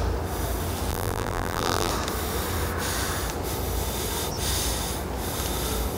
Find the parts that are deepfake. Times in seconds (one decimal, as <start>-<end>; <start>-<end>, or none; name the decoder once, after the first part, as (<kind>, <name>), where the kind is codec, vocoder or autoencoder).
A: 0.9-1.9 (vocoder, BigVGAN v2)